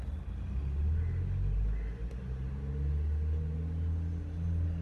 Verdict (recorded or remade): recorded